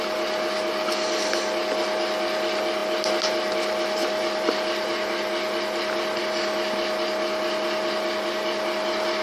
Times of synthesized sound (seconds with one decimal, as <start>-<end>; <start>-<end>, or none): none